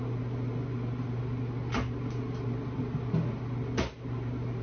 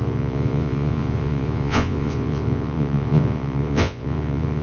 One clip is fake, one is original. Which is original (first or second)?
first